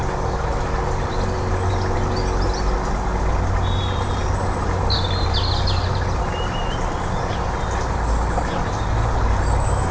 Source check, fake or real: real